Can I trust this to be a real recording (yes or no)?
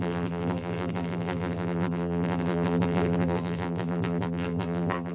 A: no